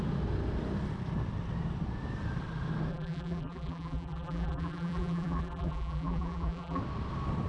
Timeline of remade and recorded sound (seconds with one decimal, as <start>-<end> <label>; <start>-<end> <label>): 0.0-2.9 recorded; 2.9-6.8 remade; 6.8-7.5 recorded